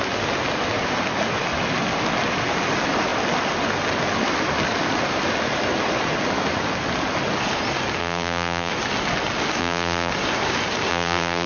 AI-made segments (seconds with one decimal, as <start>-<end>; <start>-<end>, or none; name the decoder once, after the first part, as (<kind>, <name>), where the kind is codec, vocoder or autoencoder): 8.0-8.7 (vocoder, BigVGAN v2); 9.6-10.1; 10.9-11.5